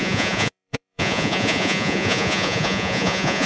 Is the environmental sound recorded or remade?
remade